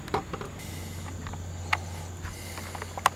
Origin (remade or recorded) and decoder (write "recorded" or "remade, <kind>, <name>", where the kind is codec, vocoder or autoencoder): recorded